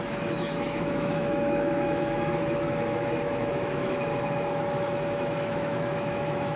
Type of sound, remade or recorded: remade